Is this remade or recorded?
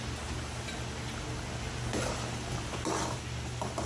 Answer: recorded